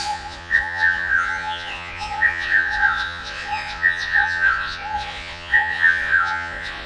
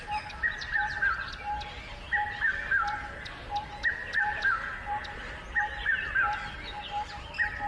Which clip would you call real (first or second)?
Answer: second